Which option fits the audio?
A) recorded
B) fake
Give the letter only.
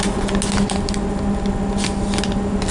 A